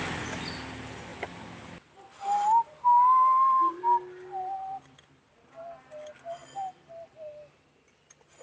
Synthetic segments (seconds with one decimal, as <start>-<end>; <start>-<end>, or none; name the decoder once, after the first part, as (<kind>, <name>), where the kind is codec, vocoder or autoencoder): none